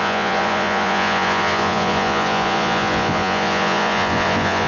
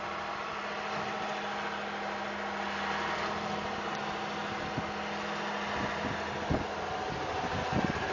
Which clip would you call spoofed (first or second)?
first